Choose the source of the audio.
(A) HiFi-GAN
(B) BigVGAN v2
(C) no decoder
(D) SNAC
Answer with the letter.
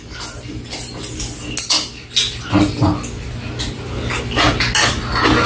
C